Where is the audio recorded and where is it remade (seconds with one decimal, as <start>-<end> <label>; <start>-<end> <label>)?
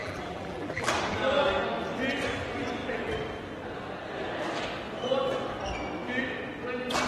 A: 0.0-0.9 remade; 0.9-7.1 recorded